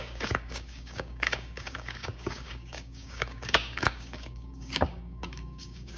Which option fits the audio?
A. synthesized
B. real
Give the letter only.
A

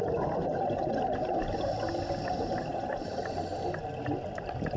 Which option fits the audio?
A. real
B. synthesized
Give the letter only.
A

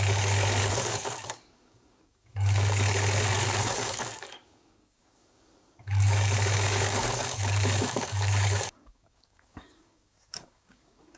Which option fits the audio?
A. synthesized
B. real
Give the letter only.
A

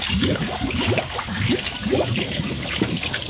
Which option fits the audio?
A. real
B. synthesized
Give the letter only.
B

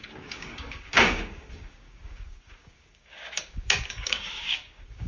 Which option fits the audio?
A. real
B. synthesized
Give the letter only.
B